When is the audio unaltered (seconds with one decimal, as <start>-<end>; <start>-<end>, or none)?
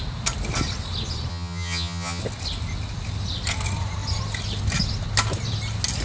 0.0-1.3; 2.2-6.0